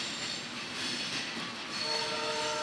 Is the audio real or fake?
real